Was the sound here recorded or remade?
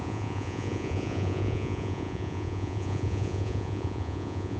remade